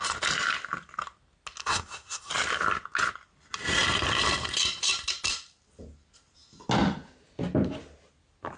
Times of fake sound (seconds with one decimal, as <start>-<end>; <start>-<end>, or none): 1.6-2.3